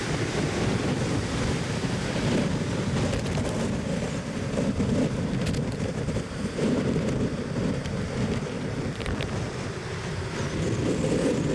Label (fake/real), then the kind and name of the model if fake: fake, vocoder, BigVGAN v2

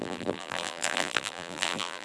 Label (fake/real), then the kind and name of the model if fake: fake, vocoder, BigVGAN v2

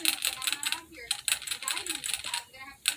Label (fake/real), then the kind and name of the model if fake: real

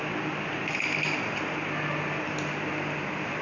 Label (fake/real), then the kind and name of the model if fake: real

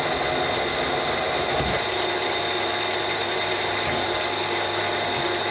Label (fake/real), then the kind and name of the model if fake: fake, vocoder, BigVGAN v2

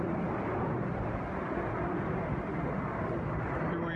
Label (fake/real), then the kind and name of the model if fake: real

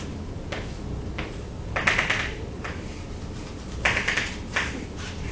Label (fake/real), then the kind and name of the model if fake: fake, vocoder, BigVGAN v2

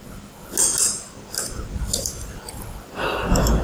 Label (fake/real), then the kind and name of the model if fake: real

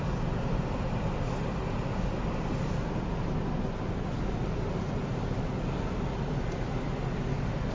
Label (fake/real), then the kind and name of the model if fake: real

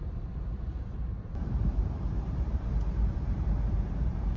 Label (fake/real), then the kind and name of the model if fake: fake, vocoder, BigVGAN v2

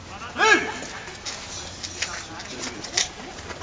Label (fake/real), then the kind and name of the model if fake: real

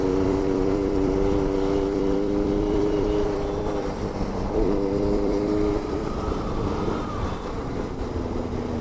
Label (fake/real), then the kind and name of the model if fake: fake, vocoder, BigVGAN v2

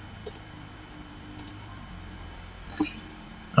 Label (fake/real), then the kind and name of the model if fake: fake, vocoder, BigVGAN v2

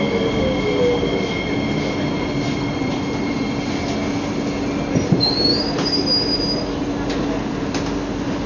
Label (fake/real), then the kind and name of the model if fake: real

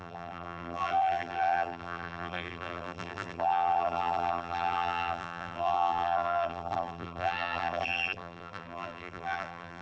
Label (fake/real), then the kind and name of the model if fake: fake, vocoder, BigVGAN v2